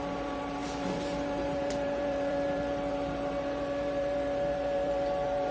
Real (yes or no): no